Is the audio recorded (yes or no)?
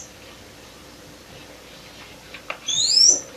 yes